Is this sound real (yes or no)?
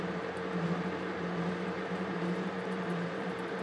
no